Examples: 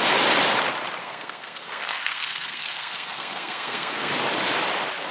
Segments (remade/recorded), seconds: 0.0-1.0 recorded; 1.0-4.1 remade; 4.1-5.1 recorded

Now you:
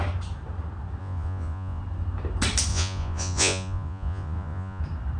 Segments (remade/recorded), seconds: 0.0-1.0 recorded; 1.0-1.8 remade; 1.8-2.7 recorded; 2.7-4.8 remade; 4.8-5.2 recorded

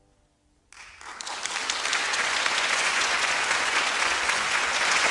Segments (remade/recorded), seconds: 0.0-1.9 recorded; 1.9-5.1 remade